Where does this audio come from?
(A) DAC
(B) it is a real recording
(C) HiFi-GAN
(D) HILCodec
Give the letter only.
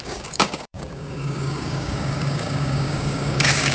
A